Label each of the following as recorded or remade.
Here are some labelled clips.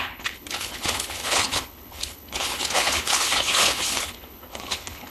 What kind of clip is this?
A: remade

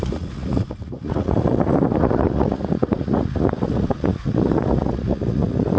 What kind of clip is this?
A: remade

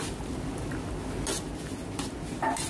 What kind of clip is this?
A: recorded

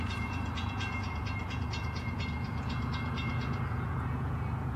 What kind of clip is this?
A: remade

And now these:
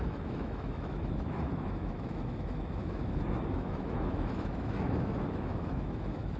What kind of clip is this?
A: remade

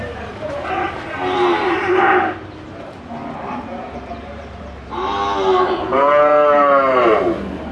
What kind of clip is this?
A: remade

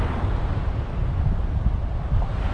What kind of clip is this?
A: recorded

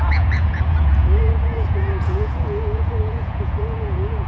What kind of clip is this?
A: remade